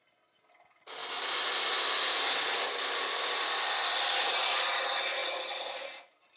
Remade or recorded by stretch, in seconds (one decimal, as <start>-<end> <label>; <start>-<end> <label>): 0.0-5.2 recorded; 5.2-5.7 remade; 5.7-6.4 recorded